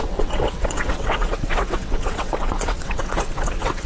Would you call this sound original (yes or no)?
no